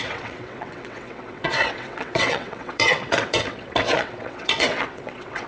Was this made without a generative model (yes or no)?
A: no